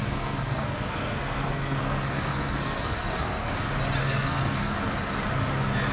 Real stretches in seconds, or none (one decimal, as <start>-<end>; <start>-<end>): 3.5-4.0; 4.7-5.9

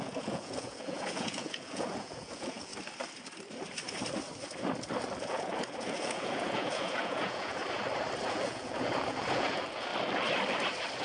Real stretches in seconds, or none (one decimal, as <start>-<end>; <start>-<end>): 2.7-5.2; 7.6-8.3; 9.9-11.0

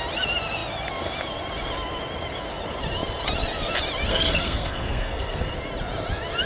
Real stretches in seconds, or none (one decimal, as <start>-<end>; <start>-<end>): 0.0-4.1; 5.5-6.5

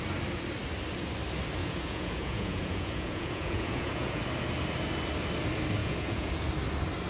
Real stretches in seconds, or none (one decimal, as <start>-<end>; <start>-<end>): 0.0-1.6; 4.2-5.8; 6.3-7.1

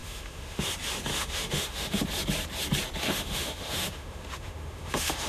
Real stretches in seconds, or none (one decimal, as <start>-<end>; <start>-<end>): 0.7-1.1; 2.0-3.0

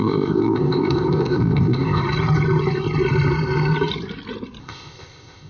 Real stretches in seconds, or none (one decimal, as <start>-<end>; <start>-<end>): 2.0-4.6

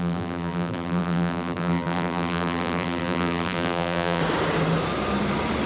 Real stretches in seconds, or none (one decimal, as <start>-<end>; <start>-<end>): 4.2-5.7

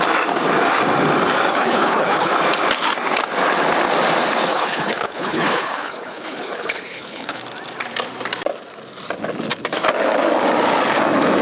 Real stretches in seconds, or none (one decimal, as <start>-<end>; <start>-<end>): 0.0-1.5; 2.3-4.5; 7.4-11.4